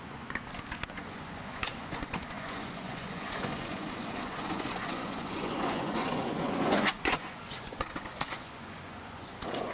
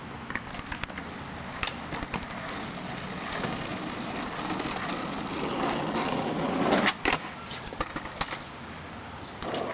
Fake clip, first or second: first